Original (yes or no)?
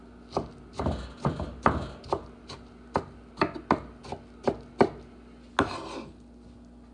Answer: yes